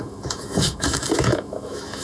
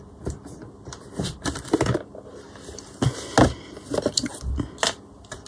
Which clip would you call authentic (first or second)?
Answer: second